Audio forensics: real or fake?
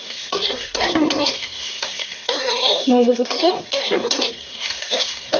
fake